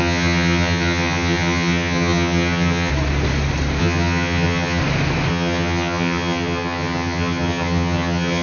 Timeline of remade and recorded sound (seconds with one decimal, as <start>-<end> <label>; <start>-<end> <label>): 0.0-2.9 remade; 2.9-3.8 recorded; 3.8-4.8 remade; 4.8-5.3 recorded; 5.3-8.4 remade